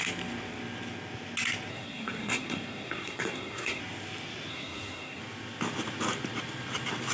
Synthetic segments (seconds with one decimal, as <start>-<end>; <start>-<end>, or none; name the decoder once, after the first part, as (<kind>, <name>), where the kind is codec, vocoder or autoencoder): 1.7-3.8 (codec, SNAC); 4.5-5.2